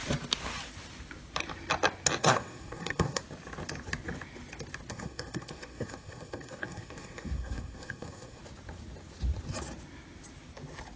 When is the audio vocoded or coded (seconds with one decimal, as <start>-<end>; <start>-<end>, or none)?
2.2-3.2; 4.9-8.4